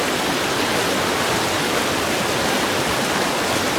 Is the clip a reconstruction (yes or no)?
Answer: no